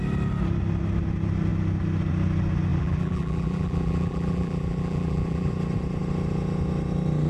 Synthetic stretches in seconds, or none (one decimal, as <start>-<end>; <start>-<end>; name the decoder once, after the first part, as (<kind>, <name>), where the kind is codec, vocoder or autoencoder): 2.7-5.5 (vocoder, BigVGAN v2)